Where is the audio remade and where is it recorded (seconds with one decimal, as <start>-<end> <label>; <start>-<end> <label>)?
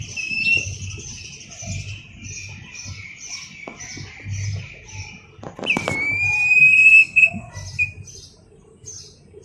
0.0-6.6 recorded; 6.6-7.5 remade; 7.5-9.4 recorded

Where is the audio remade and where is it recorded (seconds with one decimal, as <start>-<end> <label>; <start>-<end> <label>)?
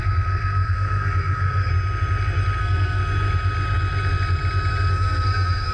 0.0-1.7 remade; 1.7-2.6 recorded; 2.6-3.0 remade; 3.0-4.9 recorded; 4.9-5.7 remade